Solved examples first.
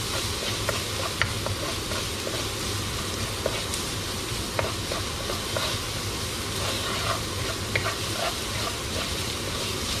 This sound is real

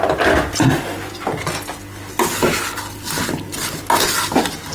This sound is real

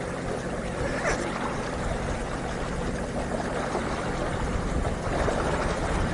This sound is real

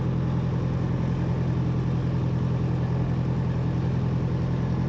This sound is real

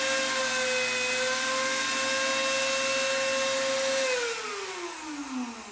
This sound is real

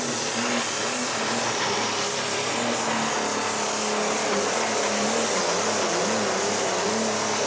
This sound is real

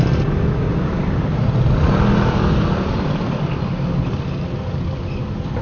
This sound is real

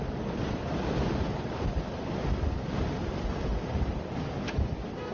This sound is real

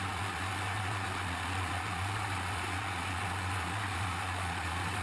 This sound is fake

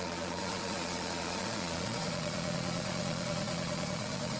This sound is fake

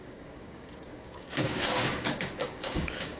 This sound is fake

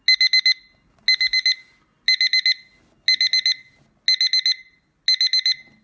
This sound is real